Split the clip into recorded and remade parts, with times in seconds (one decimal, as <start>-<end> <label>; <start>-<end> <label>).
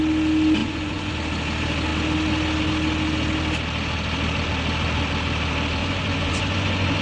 0.0-0.6 recorded; 0.6-1.1 remade; 1.1-5.8 recorded; 5.8-7.0 remade